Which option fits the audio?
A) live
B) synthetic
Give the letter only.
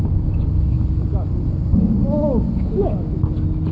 A